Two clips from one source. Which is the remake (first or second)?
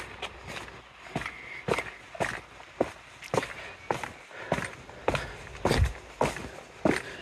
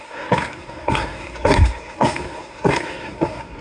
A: second